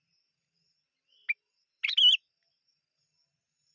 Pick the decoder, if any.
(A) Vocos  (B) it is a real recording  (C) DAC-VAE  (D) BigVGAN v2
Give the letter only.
B